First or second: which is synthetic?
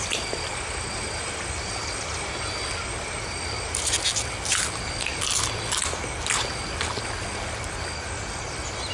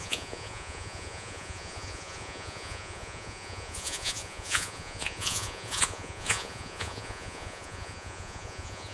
second